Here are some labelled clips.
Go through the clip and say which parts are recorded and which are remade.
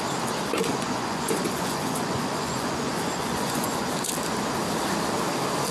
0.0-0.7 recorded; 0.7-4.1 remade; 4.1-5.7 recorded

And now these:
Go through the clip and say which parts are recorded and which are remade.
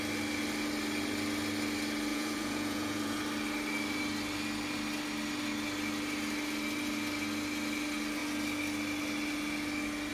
0.0-2.1 recorded; 2.1-3.2 remade; 3.2-10.1 recorded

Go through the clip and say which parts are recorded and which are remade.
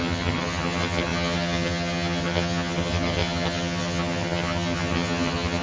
0.0-5.6 remade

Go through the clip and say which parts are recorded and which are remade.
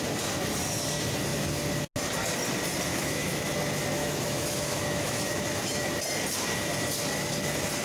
0.0-2.9 recorded; 2.9-3.5 remade; 3.5-4.0 recorded; 4.0-5.9 remade; 5.9-7.8 recorded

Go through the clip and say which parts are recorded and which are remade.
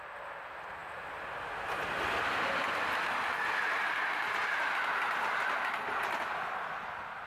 0.0-7.3 recorded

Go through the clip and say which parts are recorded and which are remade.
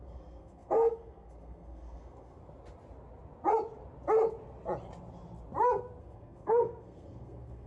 0.0-2.4 remade; 2.4-6.0 recorded; 6.0-7.7 remade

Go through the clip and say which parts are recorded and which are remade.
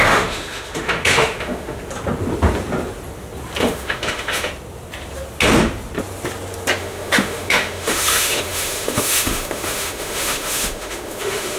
0.0-1.8 remade; 1.8-3.6 recorded; 3.6-4.5 remade; 4.5-6.8 recorded; 6.8-11.6 remade